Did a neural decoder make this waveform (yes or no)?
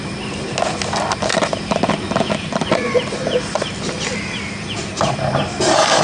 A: no